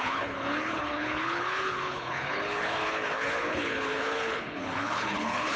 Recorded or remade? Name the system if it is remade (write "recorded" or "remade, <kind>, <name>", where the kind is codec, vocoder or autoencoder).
remade, codec, HILCodec